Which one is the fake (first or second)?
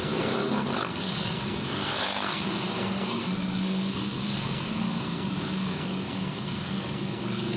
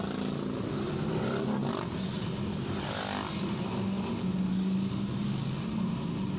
first